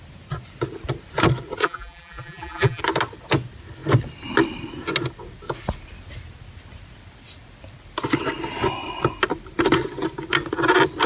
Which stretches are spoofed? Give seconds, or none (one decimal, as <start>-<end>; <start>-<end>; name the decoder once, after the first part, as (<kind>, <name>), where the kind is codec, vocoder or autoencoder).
1.6-2.8 (vocoder, BigVGAN v2)